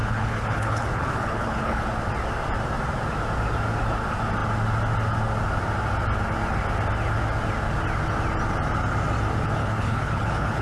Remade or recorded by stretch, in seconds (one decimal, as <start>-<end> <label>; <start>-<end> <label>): 0.0-1.9 remade; 1.9-9.6 recorded; 9.6-10.6 remade